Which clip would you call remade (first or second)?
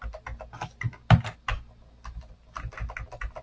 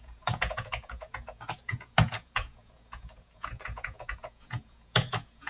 second